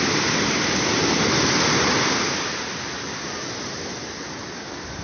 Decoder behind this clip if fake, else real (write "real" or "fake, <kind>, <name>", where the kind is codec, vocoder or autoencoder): real